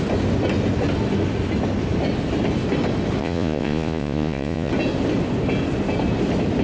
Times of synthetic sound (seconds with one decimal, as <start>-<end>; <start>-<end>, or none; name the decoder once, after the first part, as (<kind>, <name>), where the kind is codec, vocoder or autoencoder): 3.2-4.7 (vocoder, Vocos)